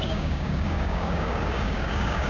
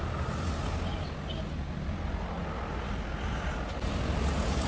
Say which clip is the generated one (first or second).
first